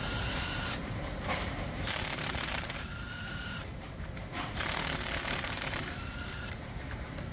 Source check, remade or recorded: remade